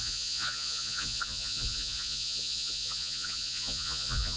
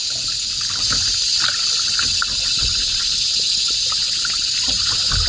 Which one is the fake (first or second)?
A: first